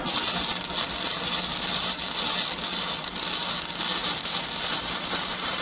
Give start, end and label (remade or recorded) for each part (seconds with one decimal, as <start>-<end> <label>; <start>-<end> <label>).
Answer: 0.0-4.0 recorded; 4.0-5.6 remade